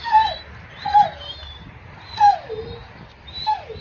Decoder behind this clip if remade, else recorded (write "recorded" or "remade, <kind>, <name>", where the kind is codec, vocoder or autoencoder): recorded